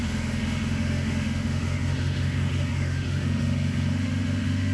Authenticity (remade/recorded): remade